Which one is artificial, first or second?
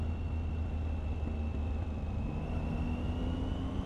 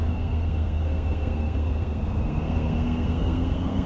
second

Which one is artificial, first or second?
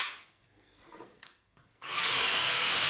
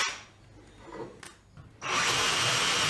first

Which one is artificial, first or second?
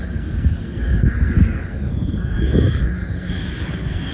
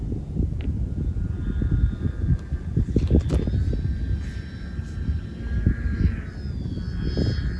first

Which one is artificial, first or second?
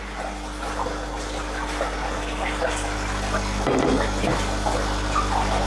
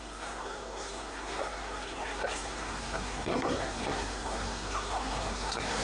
second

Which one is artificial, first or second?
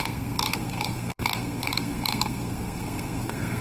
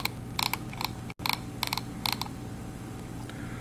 first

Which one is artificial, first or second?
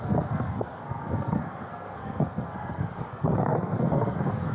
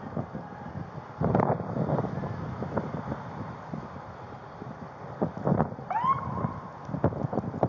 first